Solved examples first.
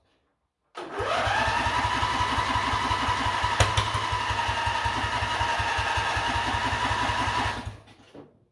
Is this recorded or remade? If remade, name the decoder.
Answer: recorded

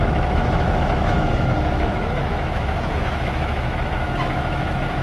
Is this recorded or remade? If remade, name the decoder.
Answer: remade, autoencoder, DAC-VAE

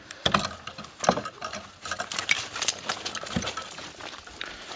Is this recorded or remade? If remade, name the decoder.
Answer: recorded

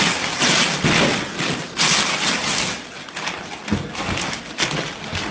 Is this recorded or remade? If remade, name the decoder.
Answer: recorded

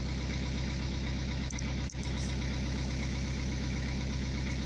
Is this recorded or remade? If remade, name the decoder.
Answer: remade, autoencoder, DAC-VAE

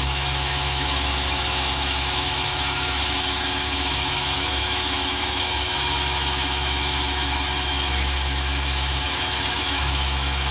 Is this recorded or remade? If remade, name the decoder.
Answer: remade, autoencoder, DAC-VAE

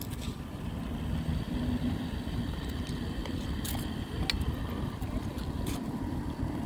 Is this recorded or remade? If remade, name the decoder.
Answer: recorded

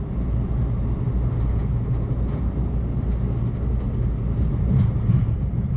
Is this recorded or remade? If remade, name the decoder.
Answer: recorded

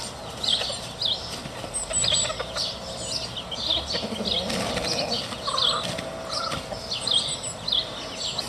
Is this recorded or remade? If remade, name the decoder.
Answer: recorded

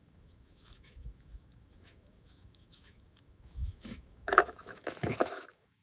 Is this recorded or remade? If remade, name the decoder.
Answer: remade, autoencoder, DAC-VAE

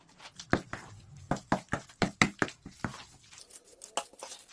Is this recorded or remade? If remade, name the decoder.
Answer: recorded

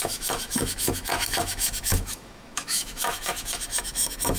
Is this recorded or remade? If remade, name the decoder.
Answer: remade, autoencoder, DAC-VAE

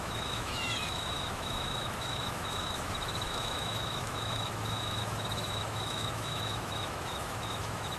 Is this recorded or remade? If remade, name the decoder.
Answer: remade, autoencoder, DAC-VAE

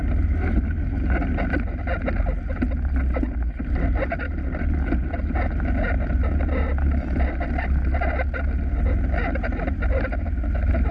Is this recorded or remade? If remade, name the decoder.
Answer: recorded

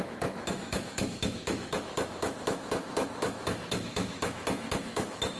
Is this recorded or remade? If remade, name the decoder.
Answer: remade, autoencoder, DAC-VAE